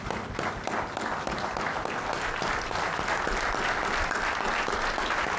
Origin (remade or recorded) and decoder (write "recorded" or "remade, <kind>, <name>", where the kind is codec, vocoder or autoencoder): recorded